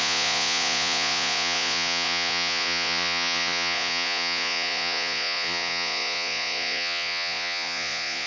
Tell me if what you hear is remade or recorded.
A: remade